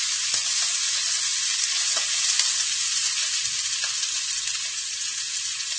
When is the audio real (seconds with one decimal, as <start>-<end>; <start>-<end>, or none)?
0.0-5.8